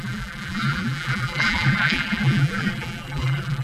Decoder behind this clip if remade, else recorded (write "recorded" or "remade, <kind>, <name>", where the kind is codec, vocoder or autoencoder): remade, vocoder, BigVGAN v2